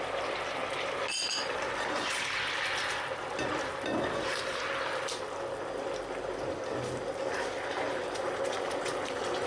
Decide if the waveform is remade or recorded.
recorded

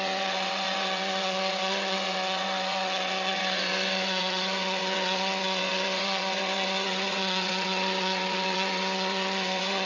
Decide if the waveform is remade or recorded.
remade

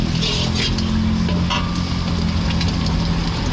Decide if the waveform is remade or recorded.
recorded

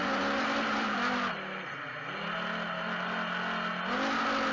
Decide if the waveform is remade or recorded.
recorded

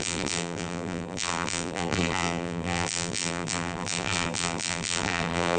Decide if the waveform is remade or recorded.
remade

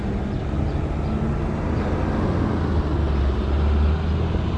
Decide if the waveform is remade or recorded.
recorded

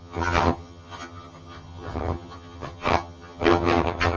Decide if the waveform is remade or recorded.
remade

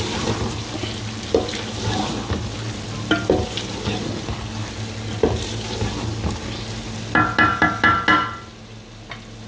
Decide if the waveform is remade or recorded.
recorded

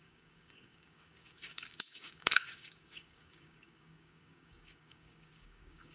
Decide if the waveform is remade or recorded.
remade